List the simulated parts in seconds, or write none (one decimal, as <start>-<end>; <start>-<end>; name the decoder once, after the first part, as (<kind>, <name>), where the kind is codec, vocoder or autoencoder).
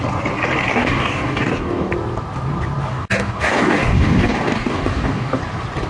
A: 0.7-1.9 (codec, DAC); 2.9-5.4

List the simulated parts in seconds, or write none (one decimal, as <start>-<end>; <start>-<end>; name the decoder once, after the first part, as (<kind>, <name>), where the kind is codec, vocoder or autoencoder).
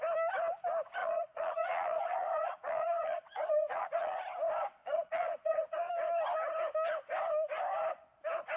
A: 1.0-4.2 (vocoder, Vocos); 4.8-5.9